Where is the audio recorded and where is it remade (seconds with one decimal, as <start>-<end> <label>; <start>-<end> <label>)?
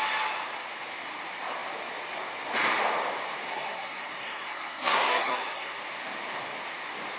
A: 0.0-3.5 recorded; 3.5-5.8 remade; 5.8-7.2 recorded